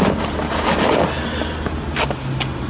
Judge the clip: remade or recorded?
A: recorded